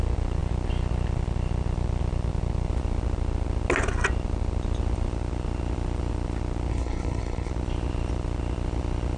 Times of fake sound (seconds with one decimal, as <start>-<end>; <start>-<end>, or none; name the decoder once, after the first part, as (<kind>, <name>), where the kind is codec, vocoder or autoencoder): 6.7-7.5 (codec, HILCodec)